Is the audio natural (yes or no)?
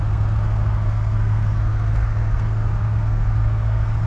no